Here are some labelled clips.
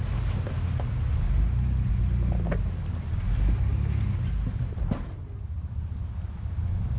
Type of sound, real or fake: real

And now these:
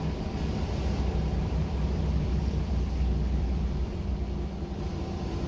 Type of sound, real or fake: fake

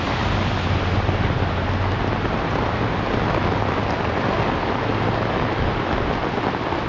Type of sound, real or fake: real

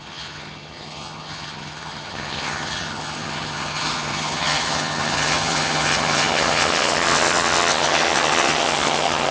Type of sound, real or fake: fake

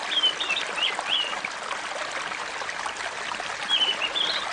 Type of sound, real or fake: real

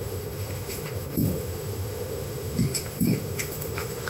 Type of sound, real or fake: fake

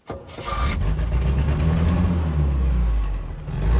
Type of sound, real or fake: real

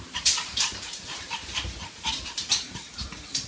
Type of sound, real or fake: fake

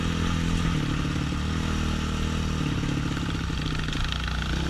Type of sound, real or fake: real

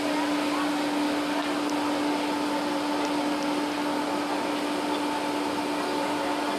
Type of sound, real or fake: real